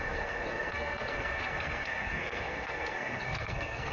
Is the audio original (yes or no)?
no